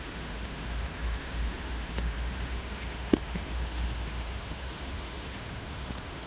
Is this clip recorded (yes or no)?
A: no